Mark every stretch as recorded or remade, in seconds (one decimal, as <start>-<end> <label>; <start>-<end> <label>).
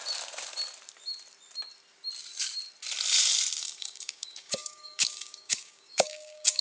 0.0-3.6 recorded; 3.6-6.6 remade